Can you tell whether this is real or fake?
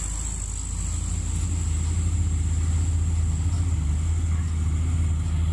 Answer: real